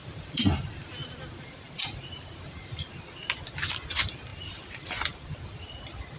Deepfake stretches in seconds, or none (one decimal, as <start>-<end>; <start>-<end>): 0.0-2.9; 4.3-5.8